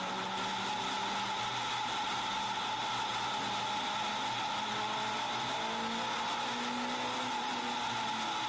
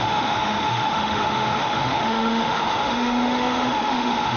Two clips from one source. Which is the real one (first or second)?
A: first